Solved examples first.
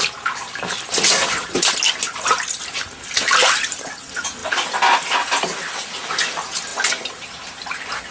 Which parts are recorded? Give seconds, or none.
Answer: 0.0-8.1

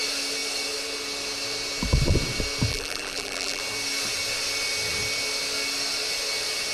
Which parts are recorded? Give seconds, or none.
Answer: 0.0-2.7; 3.6-6.7

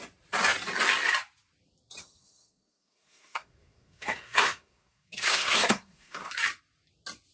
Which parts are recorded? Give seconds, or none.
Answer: 0.0-2.0; 6.3-7.3

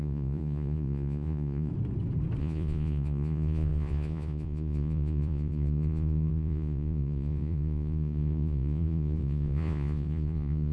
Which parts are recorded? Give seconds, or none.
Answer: 1.7-2.4

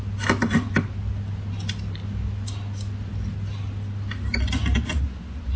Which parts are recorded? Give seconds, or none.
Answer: 0.0-5.6

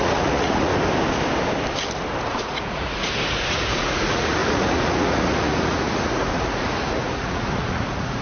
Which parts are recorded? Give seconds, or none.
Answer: 0.7-2.2

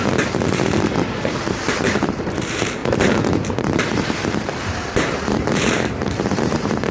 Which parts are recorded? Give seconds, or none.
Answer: 2.8-3.5

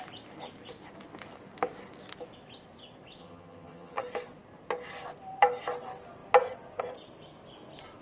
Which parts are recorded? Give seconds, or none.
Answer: 0.0-3.2; 4.0-8.0